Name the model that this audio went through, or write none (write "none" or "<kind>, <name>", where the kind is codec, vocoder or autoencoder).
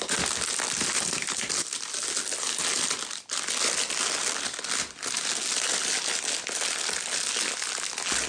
none